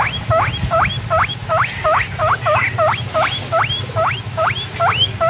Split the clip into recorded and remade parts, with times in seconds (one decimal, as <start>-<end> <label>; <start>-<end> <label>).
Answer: 0.0-5.3 recorded